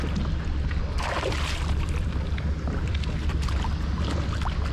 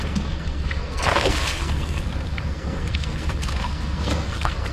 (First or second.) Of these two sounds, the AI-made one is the second